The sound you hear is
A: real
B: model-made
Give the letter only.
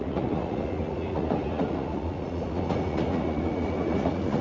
B